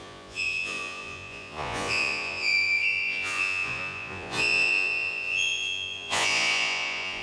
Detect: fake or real fake